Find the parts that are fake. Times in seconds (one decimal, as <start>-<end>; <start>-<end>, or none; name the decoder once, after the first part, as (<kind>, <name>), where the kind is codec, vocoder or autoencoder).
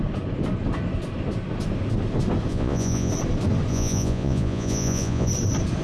2.5-3.1 (vocoder, Vocos); 3.7-5.3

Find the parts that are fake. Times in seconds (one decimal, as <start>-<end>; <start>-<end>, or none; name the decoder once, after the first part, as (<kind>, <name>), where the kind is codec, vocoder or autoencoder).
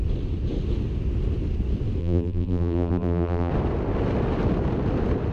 2.0-3.5 (vocoder, BigVGAN v2)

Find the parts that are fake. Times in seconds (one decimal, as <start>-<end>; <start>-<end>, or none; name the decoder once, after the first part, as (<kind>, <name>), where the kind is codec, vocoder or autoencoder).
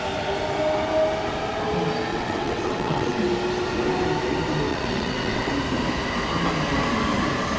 2.1-3.2 (vocoder, WaveNeXt); 4.7-5.5